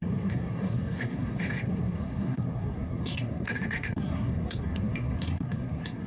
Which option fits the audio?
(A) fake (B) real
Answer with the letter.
A